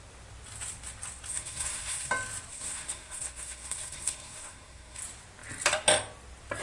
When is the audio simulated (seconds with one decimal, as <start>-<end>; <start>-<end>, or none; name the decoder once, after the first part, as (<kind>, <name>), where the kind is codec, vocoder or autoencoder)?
1.3-2.1 (codec, SNAC); 2.5-5.0

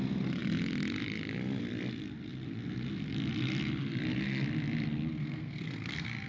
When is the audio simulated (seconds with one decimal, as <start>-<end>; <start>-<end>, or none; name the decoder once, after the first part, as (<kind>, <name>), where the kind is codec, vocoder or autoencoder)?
5.2-6.3 (codec, SNAC)

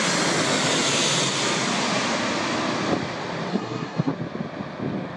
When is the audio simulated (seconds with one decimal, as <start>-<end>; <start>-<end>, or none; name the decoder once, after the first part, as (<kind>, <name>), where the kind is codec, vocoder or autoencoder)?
3.5-4.1 (codec, SNAC)

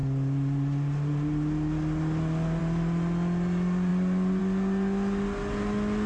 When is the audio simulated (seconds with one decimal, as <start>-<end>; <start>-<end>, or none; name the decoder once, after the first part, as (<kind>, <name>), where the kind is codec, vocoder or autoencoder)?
none

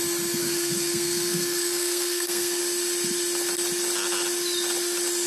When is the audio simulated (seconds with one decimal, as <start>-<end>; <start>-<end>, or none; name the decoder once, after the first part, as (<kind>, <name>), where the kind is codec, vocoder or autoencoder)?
0.4-2.6 (codec, SNAC)

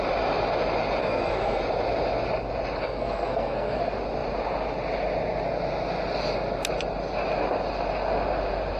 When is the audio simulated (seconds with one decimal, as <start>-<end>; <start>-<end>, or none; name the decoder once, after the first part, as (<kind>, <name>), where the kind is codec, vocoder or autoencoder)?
1.0-1.6 (codec, SNAC); 2.8-3.8

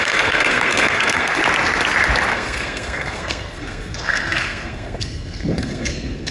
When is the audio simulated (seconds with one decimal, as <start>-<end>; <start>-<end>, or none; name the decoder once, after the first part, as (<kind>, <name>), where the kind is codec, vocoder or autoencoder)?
0.0-1.4 (codec, SNAC); 2.3-6.3